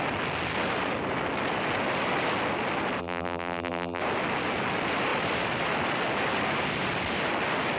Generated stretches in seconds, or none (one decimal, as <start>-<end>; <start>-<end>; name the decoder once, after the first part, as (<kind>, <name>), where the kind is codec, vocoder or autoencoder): 3.0-4.0 (vocoder, BigVGAN v2)